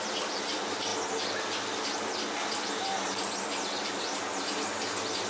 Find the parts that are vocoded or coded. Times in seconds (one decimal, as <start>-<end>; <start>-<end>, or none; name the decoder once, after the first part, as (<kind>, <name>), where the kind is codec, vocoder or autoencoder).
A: none